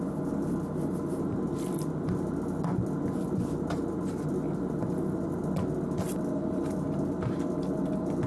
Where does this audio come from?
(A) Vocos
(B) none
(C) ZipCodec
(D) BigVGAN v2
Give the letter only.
B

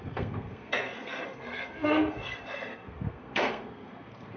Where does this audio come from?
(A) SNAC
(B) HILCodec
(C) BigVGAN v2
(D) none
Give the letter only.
A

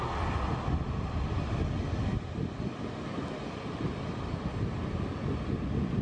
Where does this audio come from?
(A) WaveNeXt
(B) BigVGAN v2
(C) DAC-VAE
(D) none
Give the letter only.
D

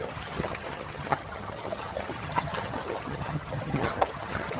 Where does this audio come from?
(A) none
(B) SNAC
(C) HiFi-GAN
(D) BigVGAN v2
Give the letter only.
C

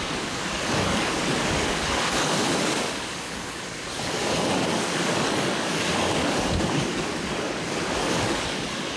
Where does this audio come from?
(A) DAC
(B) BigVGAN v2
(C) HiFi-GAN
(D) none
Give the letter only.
A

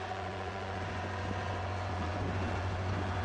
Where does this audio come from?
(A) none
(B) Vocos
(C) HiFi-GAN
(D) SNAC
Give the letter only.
B